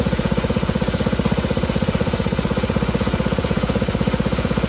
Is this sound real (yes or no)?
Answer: no